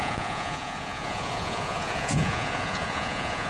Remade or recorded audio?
remade